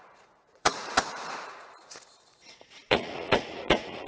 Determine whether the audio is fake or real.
fake